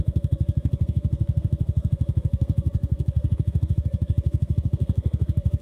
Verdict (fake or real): fake